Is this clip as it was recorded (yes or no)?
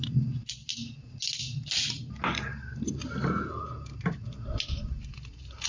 yes